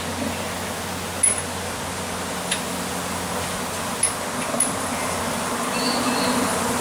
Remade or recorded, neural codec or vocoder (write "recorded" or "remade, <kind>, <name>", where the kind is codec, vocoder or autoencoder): recorded